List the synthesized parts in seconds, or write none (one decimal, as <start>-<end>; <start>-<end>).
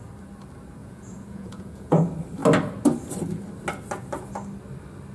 0.8-2.0